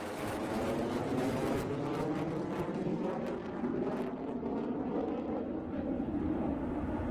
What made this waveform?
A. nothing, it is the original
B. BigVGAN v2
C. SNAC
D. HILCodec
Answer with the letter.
A